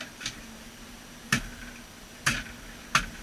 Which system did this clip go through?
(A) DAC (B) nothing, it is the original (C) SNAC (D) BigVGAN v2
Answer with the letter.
B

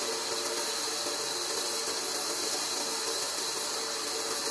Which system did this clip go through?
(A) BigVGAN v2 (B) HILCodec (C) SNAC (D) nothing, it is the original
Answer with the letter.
D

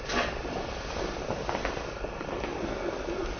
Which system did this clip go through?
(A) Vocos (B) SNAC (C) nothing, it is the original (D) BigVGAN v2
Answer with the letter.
D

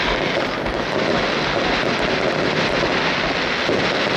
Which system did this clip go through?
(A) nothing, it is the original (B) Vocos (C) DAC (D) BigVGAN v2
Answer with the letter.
A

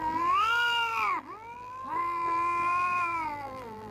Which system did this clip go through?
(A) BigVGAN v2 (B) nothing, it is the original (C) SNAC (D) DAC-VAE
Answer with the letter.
A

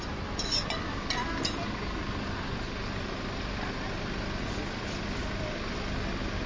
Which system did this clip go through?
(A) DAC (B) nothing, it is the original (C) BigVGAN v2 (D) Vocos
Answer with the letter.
B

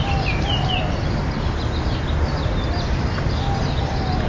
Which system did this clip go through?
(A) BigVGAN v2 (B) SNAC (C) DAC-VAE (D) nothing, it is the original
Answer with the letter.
D